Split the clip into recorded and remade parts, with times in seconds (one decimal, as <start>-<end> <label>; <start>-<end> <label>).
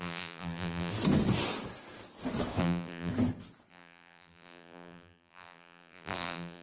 0.0-0.9 remade; 0.9-2.6 recorded; 2.6-3.1 remade; 3.1-3.7 recorded; 3.7-6.6 remade